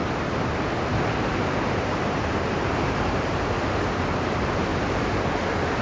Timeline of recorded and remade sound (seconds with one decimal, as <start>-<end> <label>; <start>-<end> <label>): 0.0-3.5 remade; 3.5-5.8 recorded